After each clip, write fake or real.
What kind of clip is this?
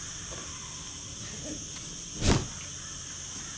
real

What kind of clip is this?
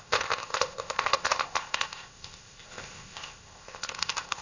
fake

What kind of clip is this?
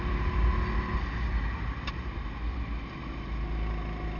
real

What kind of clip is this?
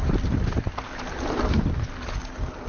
real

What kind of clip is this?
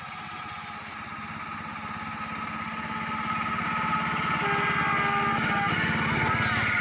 real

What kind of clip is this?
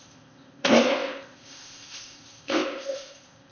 fake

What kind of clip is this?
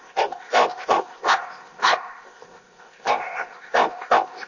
fake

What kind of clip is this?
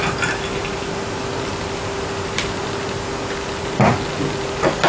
real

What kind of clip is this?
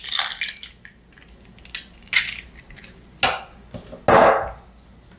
real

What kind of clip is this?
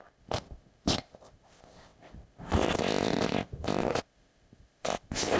fake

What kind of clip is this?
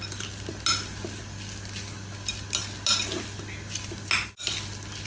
real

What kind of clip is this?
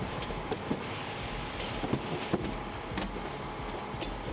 real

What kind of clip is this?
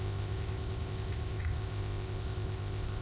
fake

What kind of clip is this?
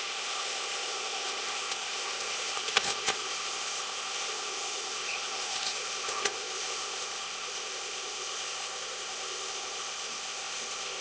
fake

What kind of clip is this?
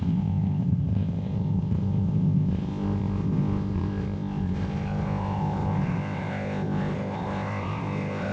fake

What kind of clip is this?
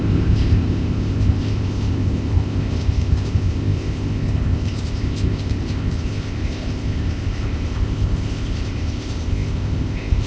fake